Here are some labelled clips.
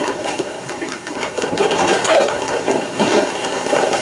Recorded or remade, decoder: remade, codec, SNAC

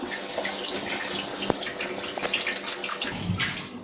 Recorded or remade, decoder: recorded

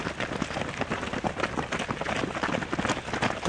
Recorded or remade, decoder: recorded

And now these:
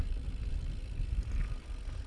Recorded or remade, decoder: recorded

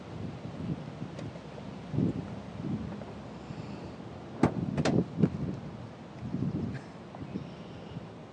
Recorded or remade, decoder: recorded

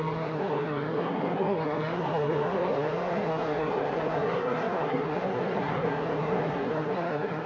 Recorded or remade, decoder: remade, codec, SNAC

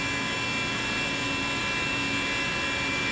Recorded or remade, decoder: recorded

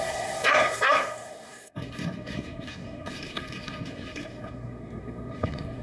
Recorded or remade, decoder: remade, codec, SNAC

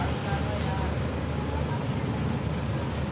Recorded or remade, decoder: recorded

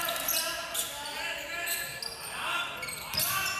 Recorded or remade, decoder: recorded